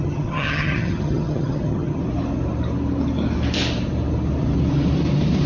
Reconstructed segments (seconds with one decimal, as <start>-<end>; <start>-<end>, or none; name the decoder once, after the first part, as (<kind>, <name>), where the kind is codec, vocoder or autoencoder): 0.0-2.0 (vocoder, HiFi-GAN)